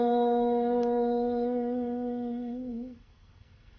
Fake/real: fake